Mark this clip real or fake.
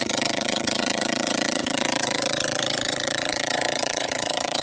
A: fake